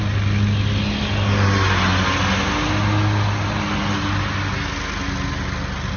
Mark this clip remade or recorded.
recorded